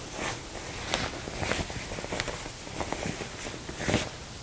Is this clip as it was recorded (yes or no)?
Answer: yes